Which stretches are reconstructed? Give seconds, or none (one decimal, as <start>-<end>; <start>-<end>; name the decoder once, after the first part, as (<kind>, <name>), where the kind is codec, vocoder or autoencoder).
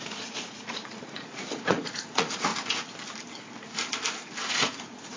0.0-2.5 (vocoder, Vocos); 4.5-5.2